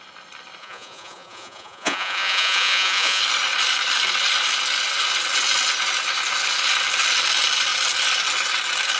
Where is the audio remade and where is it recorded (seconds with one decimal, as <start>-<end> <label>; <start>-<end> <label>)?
0.0-0.6 recorded; 0.6-3.2 remade; 3.2-9.0 recorded

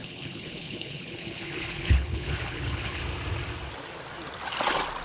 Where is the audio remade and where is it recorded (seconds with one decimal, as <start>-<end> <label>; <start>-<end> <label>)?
0.0-3.0 remade; 3.0-5.0 recorded